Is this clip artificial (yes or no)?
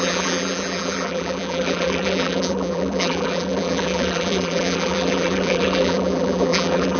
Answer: yes